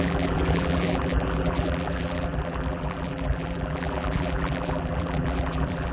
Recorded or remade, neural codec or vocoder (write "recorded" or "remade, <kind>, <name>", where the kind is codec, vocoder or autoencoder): remade, vocoder, BigVGAN v2